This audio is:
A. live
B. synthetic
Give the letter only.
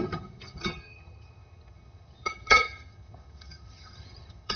B